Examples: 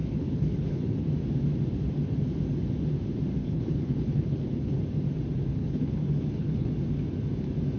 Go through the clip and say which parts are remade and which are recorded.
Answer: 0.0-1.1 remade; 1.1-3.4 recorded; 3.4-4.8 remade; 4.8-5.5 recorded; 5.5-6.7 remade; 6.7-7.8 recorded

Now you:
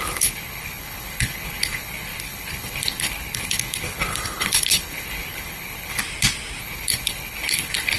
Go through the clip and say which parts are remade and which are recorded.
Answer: 0.0-6.0 remade; 6.0-6.6 recorded; 6.6-8.0 remade

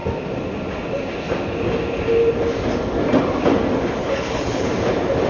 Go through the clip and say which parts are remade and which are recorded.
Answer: 0.0-4.0 recorded; 4.0-4.7 remade; 4.7-5.3 recorded